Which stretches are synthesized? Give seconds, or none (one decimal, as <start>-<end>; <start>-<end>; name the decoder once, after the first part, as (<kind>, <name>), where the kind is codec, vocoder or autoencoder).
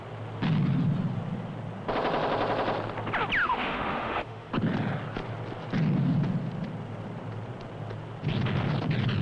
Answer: 3.4-4.5 (autoencoder, DAC-VAE)